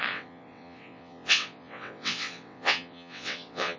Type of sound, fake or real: fake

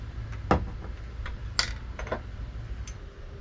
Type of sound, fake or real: real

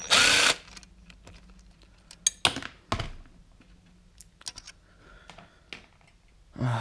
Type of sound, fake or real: real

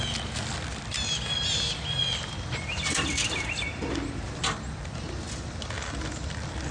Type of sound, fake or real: real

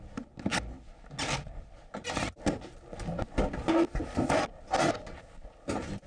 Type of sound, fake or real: real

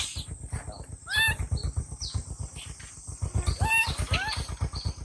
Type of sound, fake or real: real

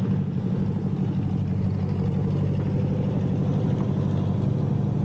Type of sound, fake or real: real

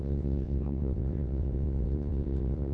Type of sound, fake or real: fake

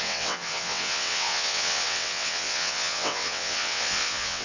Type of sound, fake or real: fake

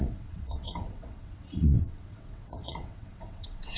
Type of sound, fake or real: fake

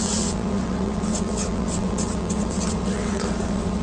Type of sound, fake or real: fake